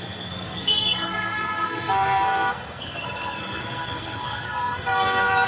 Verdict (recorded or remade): remade